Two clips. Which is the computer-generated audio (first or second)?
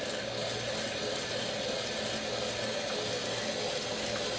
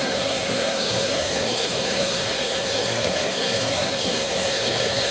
second